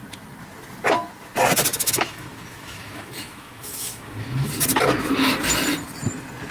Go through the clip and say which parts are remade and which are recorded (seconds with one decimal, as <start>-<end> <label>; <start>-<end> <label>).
0.0-1.7 recorded; 1.7-4.5 remade; 4.5-6.5 recorded